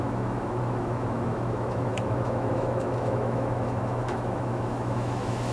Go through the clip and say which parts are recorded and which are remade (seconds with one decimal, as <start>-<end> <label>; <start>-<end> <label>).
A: 0.0-5.5 remade